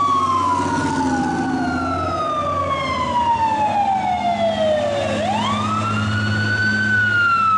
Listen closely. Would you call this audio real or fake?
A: real